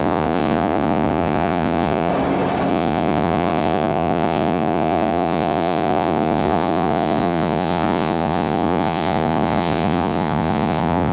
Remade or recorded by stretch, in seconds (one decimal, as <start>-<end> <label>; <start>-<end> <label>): 0.0-2.1 remade; 2.1-2.7 recorded; 2.7-11.1 remade